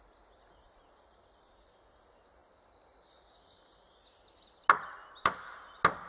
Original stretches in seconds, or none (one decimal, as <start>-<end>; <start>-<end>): 0.0-6.1